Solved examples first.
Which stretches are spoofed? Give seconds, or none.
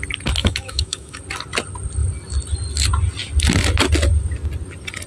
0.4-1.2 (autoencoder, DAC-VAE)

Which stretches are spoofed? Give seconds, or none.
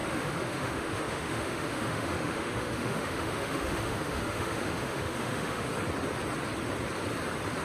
0.0-5.7 (autoencoder, DAC-VAE)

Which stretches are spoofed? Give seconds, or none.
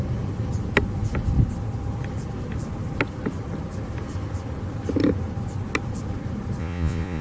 6.6-7.2 (vocoder, Vocos)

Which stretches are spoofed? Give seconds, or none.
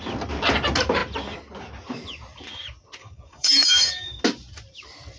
3.0-4.2 (codec, DAC)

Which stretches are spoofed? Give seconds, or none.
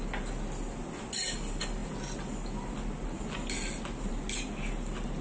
none